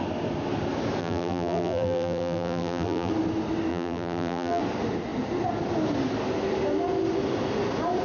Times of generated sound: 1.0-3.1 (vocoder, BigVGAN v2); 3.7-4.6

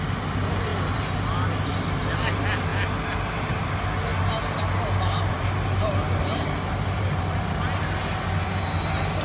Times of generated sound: none

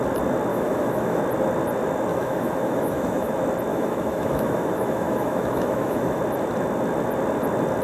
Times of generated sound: 0.5-1.2 (autoencoder, DAC-VAE); 2.1-3.3; 3.7-6.2